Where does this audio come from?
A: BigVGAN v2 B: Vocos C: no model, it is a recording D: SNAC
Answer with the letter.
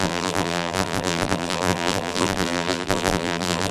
A